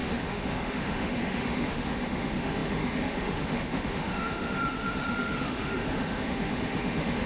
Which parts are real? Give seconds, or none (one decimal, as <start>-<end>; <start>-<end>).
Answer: none